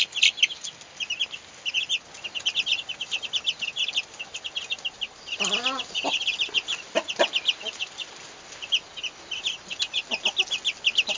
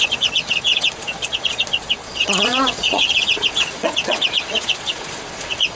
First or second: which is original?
first